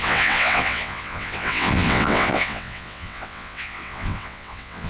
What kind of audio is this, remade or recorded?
remade